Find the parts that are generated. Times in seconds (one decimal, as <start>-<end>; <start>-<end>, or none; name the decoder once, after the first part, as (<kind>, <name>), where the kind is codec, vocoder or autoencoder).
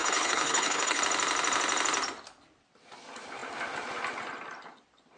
0.0-1.0 (codec, HILCodec)